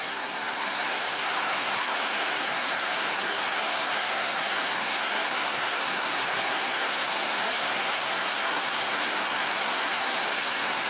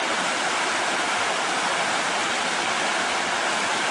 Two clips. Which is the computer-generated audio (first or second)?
first